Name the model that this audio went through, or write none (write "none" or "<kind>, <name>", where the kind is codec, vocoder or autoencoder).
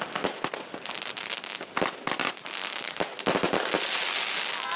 none